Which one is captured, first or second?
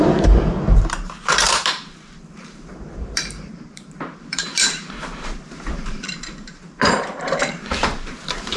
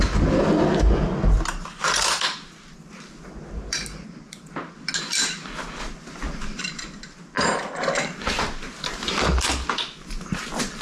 second